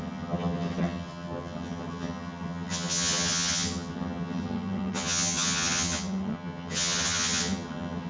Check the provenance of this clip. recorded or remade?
remade